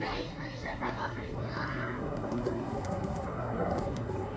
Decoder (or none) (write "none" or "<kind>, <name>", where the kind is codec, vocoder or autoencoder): codec, SNAC